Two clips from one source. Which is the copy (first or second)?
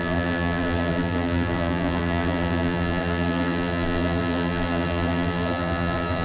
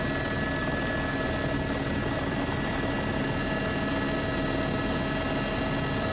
first